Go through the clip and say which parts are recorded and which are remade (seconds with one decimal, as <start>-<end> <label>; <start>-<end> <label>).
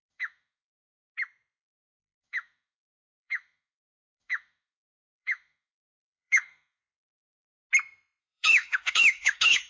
0.0-1.1 remade; 1.1-1.7 recorded; 1.7-6.8 remade; 6.8-8.2 recorded; 8.2-9.7 remade